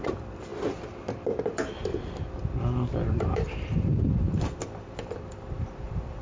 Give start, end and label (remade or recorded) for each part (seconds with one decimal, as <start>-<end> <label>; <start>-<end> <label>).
0.0-0.5 remade; 0.5-4.2 recorded; 4.2-6.2 remade